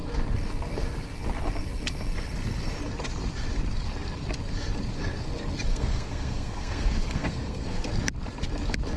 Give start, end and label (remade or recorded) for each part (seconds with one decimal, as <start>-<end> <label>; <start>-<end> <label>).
0.0-5.7 recorded; 5.7-7.9 remade; 7.9-9.0 recorded